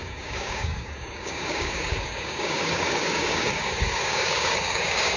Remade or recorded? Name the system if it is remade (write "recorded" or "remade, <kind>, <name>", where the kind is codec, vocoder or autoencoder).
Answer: remade, codec, DAC